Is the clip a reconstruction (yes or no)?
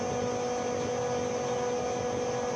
no